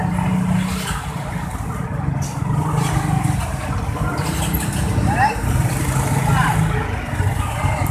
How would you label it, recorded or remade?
recorded